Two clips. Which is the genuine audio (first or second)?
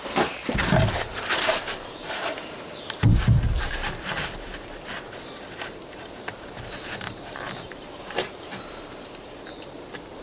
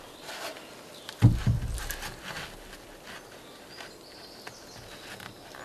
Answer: second